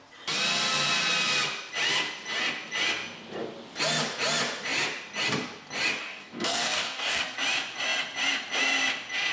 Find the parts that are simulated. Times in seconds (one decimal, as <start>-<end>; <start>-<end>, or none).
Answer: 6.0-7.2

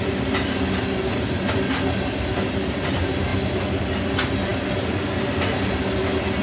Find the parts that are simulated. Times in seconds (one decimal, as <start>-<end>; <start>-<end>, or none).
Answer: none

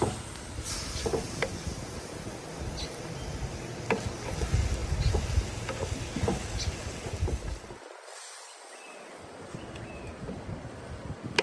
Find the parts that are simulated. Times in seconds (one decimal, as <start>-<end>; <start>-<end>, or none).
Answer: none